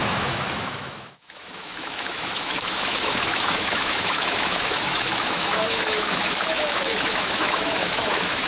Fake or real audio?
fake